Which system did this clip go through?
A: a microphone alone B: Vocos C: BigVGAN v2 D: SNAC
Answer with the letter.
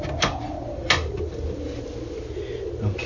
A